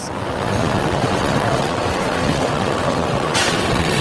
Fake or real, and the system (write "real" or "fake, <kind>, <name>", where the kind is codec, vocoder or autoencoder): fake, vocoder, WaveNeXt